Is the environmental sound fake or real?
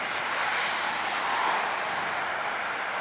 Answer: real